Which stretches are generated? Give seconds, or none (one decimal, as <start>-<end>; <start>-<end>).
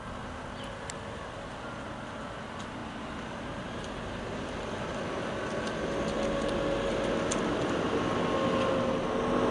none